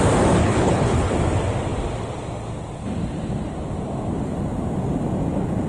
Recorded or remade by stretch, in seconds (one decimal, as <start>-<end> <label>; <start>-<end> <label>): 0.0-0.4 recorded; 0.4-1.1 remade; 1.1-5.7 recorded